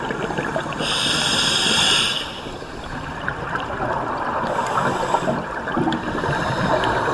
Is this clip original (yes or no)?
no